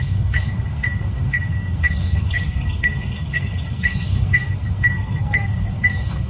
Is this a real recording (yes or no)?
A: no